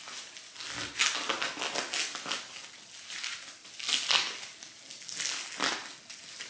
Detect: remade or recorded recorded